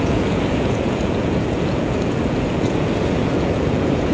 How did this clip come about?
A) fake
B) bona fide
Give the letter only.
A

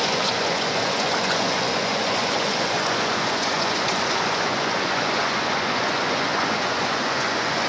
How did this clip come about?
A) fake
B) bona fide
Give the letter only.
A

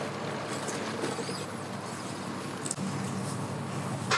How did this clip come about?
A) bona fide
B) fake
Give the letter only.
A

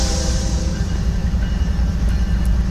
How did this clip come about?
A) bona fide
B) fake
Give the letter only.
A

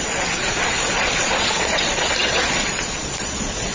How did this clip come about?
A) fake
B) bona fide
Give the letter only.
A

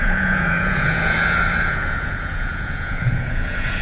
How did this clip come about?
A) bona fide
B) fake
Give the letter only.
B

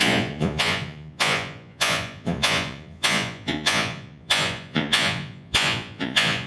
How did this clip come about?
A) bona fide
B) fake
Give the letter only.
B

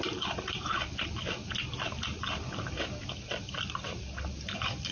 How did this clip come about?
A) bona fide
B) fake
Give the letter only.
A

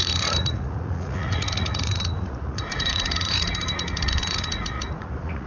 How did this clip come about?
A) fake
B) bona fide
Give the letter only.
A